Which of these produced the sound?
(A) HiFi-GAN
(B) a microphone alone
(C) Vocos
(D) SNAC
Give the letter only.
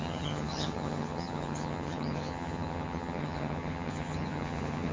A